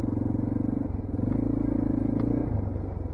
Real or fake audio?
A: real